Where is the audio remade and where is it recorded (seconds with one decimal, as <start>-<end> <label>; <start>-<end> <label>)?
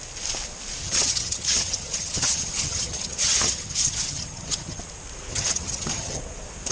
0.0-0.8 recorded; 0.8-4.8 remade; 4.8-5.3 recorded; 5.3-6.2 remade; 6.2-6.7 recorded